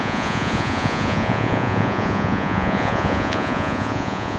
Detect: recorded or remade remade